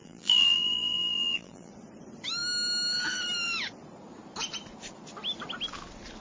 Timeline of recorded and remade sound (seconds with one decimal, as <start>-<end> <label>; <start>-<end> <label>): 0.0-1.7 remade; 1.7-6.2 recorded